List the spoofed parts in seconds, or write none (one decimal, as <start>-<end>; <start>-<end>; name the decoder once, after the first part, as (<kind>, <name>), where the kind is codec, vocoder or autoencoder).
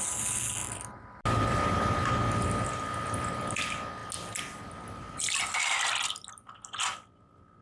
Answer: none